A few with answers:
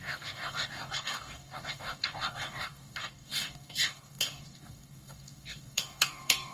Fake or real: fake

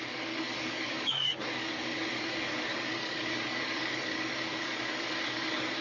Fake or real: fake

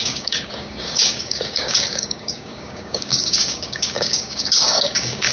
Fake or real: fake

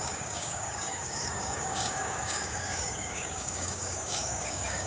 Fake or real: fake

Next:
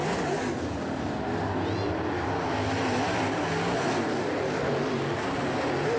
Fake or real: real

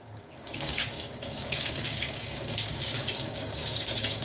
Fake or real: fake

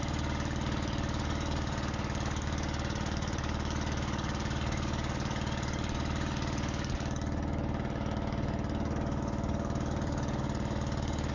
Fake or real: fake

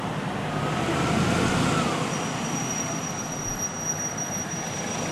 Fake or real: real